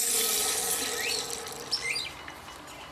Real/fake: real